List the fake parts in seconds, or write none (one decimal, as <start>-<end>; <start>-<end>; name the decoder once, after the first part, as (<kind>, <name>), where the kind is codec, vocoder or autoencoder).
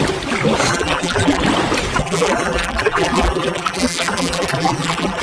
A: 0.7-1.4 (vocoder, BigVGAN v2); 2.0-5.2